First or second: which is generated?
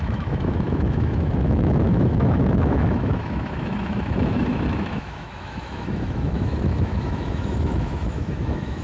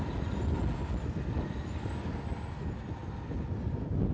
first